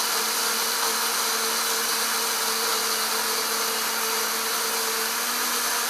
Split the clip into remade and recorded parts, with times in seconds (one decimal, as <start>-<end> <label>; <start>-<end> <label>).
0.0-5.9 recorded